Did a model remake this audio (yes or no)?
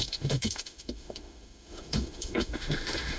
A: yes